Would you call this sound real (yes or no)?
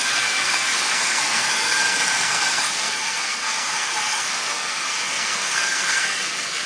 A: no